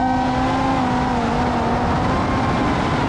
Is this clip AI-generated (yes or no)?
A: no